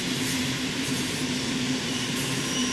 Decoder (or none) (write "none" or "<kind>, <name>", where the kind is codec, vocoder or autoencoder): vocoder, BigVGAN v2